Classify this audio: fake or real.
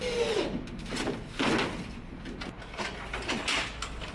real